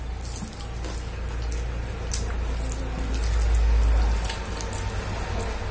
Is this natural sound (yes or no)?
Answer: yes